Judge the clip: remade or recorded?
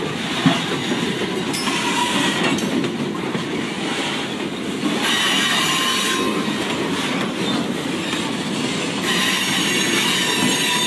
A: recorded